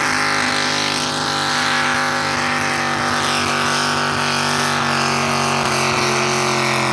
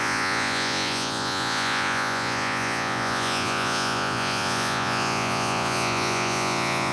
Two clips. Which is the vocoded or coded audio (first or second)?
second